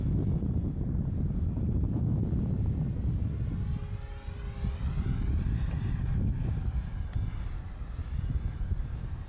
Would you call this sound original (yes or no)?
yes